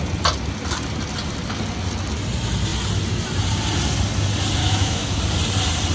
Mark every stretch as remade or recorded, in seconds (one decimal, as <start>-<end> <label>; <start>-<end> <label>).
0.0-4.6 recorded; 4.6-5.2 remade; 5.2-5.9 recorded

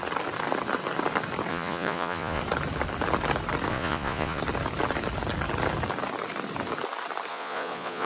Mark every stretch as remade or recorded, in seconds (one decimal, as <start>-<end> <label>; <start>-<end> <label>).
0.0-1.5 recorded; 1.5-2.4 remade; 2.4-3.7 recorded; 3.7-4.4 remade; 4.4-7.3 recorded; 7.3-8.1 remade

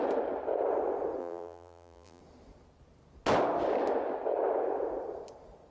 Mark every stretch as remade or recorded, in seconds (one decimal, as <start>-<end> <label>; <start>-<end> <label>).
0.0-1.2 recorded; 1.2-2.2 remade; 2.2-5.7 recorded

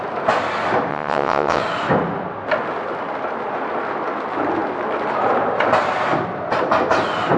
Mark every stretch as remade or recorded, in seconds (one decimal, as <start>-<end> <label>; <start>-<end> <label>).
0.0-0.9 recorded; 0.9-1.6 remade; 1.6-7.4 recorded

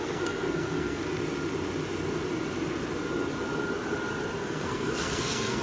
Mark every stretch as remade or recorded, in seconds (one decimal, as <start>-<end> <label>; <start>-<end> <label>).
0.0-1.0 remade; 1.0-4.4 recorded; 4.4-5.6 remade

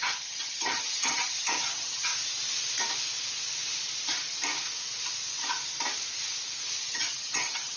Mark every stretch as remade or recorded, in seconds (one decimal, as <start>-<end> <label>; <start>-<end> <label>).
0.0-2.1 remade; 2.1-6.8 recorded; 6.8-7.8 remade

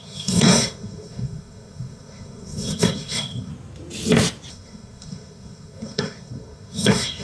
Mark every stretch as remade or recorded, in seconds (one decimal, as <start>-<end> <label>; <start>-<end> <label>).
0.0-3.5 remade; 3.5-4.5 recorded; 4.5-7.2 remade